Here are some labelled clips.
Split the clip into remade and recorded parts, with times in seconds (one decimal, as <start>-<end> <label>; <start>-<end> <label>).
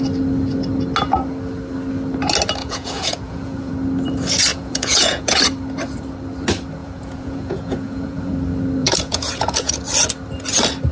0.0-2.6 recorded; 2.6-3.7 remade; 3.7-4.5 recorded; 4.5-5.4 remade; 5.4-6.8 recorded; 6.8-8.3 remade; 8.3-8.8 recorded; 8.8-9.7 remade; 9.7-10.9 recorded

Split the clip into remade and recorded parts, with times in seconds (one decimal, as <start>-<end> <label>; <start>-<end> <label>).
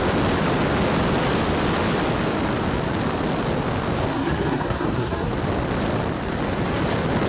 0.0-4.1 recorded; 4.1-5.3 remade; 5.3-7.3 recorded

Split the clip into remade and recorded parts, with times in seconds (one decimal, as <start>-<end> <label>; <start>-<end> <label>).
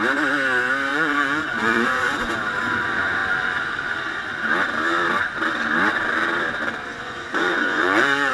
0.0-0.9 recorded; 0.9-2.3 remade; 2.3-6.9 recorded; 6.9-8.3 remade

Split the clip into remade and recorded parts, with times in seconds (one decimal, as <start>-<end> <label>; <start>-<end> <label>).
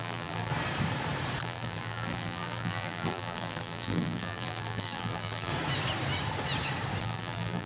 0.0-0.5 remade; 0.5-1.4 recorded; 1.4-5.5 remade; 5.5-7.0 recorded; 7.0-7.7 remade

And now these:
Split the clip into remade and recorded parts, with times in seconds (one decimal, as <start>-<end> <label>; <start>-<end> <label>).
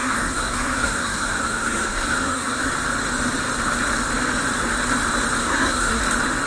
0.0-2.7 remade; 2.7-5.4 recorded; 5.4-6.0 remade; 6.0-6.5 recorded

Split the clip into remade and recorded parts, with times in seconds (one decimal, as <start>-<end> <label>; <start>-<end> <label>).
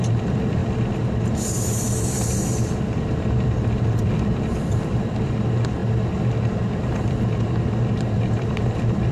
0.0-5.8 remade; 5.8-6.6 recorded; 6.6-9.1 remade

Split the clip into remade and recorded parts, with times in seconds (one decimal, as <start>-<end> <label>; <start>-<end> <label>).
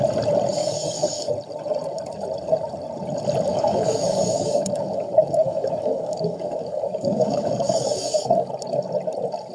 0.0-0.6 recorded; 0.6-1.2 remade; 1.2-3.5 recorded; 3.5-8.5 remade; 8.5-9.5 recorded